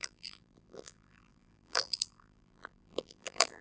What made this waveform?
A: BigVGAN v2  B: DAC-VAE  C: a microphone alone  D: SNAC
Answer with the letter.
A